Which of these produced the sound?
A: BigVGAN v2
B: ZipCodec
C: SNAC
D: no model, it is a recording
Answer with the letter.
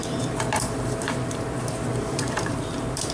A